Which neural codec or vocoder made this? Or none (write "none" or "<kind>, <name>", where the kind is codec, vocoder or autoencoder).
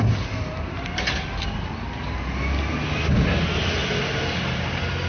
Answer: none